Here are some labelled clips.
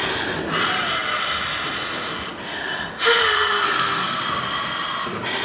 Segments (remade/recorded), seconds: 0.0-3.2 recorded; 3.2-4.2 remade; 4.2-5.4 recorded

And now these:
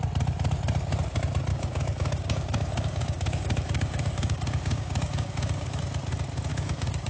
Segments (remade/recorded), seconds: 0.0-1.5 recorded; 1.5-5.8 remade; 5.8-6.5 recorded; 6.5-7.1 remade